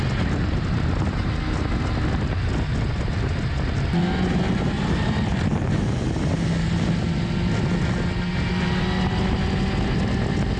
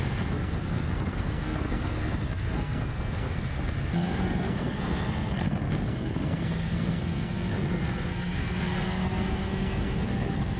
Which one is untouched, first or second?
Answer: first